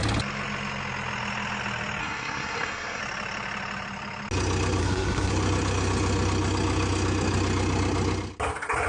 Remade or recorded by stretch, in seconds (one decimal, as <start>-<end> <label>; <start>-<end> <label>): 0.0-2.0 recorded; 2.0-3.0 remade; 3.0-4.8 recorded; 4.8-5.3 remade; 5.3-8.9 recorded